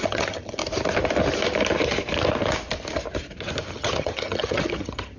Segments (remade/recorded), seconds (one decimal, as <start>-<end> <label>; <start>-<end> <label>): 0.0-0.6 remade; 0.6-3.7 recorded; 3.7-5.2 remade